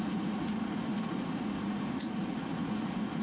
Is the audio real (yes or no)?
no